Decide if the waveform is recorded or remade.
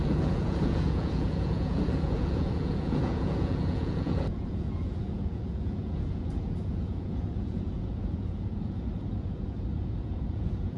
remade